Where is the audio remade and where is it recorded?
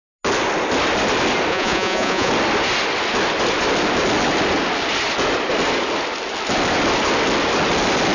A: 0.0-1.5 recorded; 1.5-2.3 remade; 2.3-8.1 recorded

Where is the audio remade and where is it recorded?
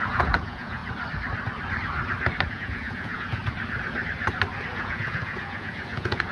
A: 0.0-0.8 remade; 0.8-2.5 recorded; 2.5-3.4 remade; 3.4-4.7 recorded; 4.7-6.3 remade